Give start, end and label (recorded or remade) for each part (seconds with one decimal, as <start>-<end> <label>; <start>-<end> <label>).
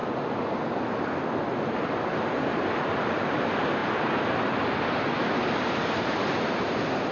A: 0.0-2.1 recorded; 2.1-3.3 remade; 3.3-5.4 recorded; 5.4-7.1 remade